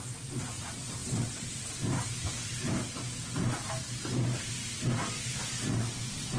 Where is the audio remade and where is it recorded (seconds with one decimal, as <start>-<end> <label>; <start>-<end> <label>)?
0.0-6.4 recorded